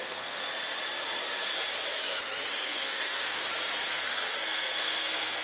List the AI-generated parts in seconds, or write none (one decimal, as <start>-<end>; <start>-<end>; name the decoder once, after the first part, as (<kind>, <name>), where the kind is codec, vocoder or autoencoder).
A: 0.0-0.4 (codec, SNAC); 2.5-3.4; 3.9-5.4